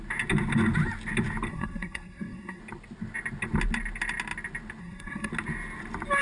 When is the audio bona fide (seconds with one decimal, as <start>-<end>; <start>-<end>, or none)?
0.0-1.5; 2.6-4.8; 5.3-6.2